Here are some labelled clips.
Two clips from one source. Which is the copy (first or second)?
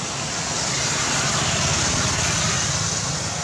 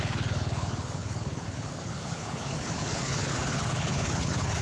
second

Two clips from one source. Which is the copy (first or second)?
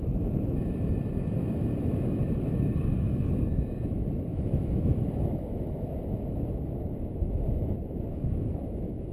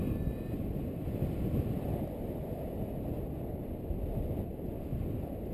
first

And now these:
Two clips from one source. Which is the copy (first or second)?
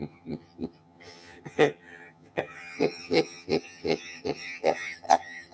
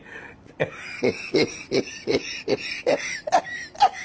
first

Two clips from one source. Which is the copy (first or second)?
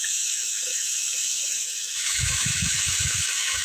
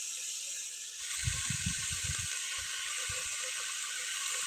first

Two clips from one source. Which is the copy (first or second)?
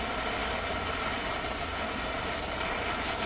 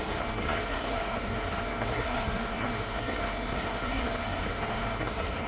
second